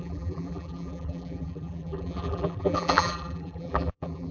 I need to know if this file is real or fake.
fake